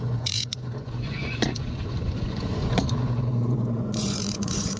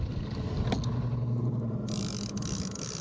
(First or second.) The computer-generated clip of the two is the first